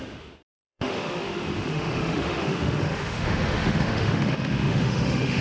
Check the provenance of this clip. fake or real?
fake